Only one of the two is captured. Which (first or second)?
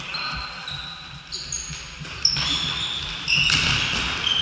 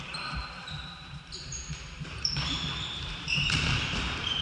first